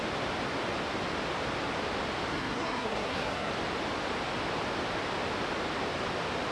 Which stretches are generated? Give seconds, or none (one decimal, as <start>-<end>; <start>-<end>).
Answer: 2.3-3.5